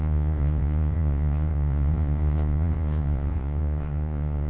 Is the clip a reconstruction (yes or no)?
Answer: yes